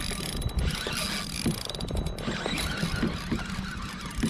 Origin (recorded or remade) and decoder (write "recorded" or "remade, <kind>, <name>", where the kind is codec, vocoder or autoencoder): recorded